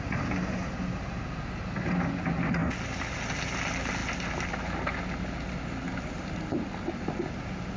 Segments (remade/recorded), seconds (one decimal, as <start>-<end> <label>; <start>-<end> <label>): 0.0-7.8 recorded